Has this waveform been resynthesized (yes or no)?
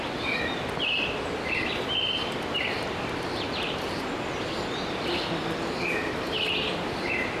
no